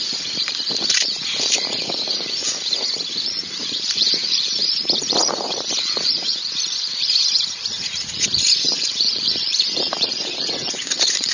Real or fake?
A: fake